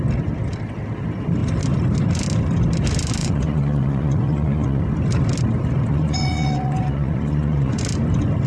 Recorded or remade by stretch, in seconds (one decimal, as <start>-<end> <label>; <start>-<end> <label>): 0.0-3.2 recorded; 3.2-4.8 remade; 4.8-5.9 recorded; 5.9-7.8 remade; 7.8-8.5 recorded